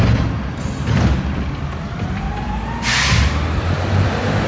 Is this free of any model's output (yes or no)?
yes